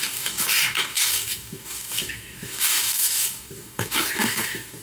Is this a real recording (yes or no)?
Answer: no